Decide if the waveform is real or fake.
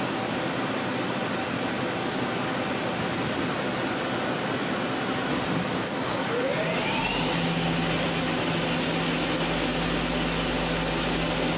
real